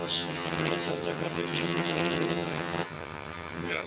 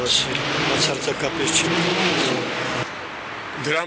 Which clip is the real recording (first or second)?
second